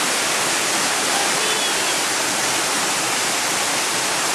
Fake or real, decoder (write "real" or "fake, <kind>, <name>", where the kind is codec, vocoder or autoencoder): real